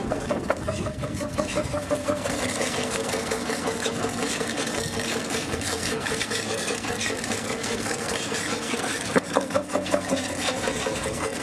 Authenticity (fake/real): fake